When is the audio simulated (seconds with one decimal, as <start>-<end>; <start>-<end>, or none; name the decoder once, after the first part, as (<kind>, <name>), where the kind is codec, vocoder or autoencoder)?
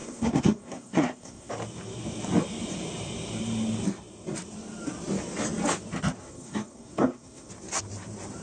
0.0-1.5 (codec, SNAC); 6.2-7.5